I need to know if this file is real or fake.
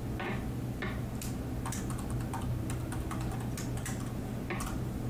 real